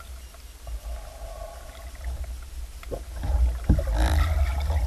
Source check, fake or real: real